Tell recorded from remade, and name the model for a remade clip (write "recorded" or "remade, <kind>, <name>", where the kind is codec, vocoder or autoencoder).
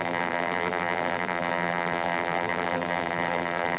remade, vocoder, BigVGAN v2